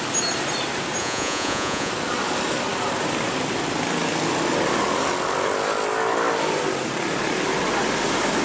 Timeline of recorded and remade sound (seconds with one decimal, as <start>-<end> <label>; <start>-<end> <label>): 0.0-1.0 recorded; 1.0-1.9 remade; 1.9-8.4 recorded